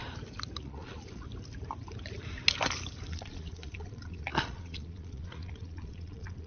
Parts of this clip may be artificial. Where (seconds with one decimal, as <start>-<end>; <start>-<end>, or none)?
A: 0.6-1.3; 3.1-6.5